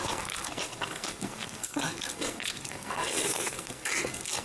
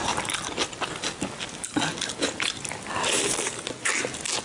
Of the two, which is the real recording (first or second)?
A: second